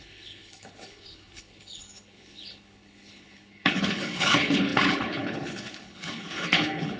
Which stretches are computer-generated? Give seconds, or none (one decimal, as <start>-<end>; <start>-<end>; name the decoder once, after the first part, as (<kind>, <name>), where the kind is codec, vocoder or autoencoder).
0.0-7.0 (codec, HILCodec)